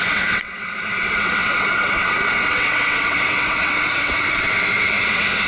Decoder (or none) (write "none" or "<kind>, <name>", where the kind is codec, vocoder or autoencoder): vocoder, WaveNeXt